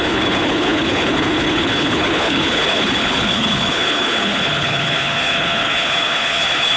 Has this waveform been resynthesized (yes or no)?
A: yes